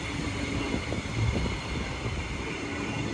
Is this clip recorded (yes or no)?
yes